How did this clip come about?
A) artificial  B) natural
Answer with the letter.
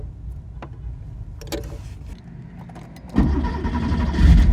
B